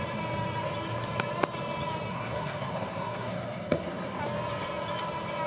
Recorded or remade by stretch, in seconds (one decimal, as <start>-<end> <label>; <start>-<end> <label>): 0.0-2.1 recorded; 2.1-4.2 remade; 4.2-5.5 recorded